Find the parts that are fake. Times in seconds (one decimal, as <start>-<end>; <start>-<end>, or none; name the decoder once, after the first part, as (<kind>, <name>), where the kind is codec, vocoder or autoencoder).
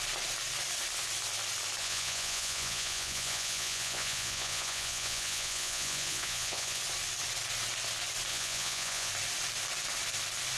1.8-6.8 (vocoder, Vocos); 8.3-9.1